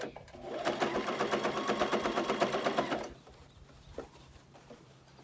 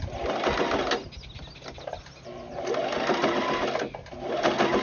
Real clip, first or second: second